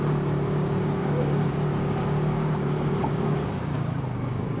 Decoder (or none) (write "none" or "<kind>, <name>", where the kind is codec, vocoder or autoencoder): codec, DAC